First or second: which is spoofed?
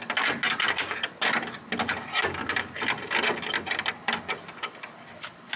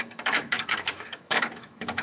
second